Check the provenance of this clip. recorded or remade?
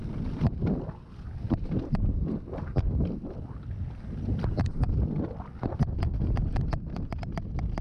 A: recorded